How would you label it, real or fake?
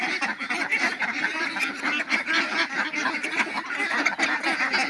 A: real